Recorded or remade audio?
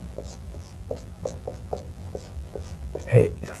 remade